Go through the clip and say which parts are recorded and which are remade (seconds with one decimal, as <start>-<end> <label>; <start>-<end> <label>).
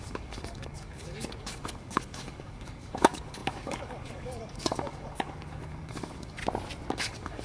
0.0-6.4 remade; 6.4-6.9 recorded; 6.9-7.4 remade